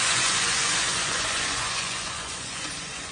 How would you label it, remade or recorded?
remade